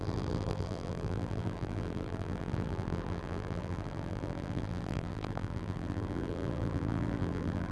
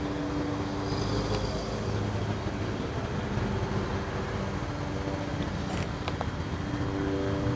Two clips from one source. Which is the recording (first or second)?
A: second